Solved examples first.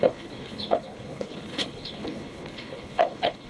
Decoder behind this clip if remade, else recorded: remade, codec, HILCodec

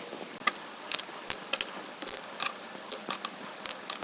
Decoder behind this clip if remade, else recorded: recorded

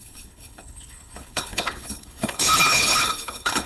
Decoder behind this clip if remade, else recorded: remade, codec, HILCodec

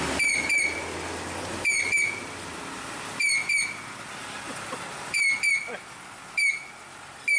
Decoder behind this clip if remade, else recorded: recorded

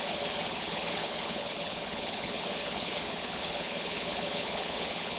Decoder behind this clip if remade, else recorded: remade, codec, HILCodec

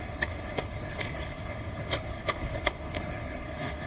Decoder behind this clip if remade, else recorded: remade, codec, HILCodec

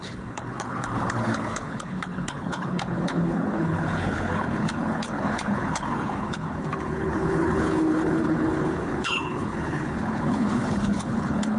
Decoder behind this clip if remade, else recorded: remade, codec, HILCodec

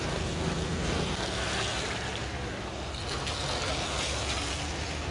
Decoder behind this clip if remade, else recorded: recorded